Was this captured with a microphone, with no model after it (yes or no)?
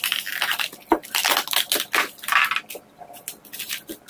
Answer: yes